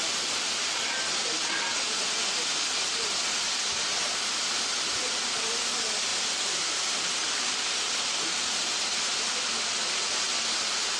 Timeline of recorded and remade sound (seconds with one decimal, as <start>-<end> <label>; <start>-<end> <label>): 0.0-6.1 recorded; 6.1-10.2 remade; 10.2-11.0 recorded